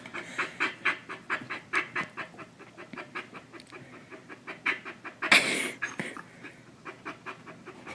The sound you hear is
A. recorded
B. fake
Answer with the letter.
A